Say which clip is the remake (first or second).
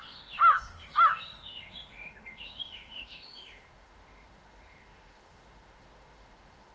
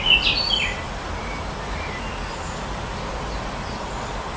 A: first